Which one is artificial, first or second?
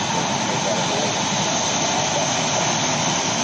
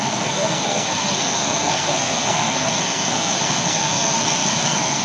second